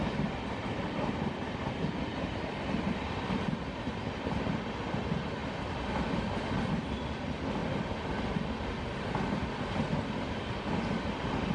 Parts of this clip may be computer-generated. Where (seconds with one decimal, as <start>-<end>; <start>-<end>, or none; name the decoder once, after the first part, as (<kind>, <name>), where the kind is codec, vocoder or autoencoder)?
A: none